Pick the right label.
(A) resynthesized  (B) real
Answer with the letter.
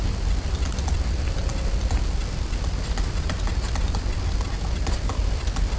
B